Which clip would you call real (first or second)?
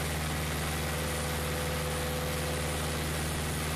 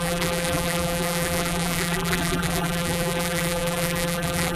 first